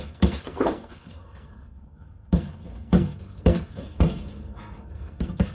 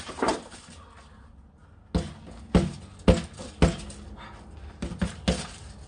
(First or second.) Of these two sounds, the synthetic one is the first